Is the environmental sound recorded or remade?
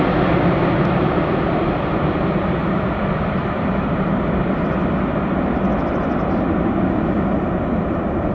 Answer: recorded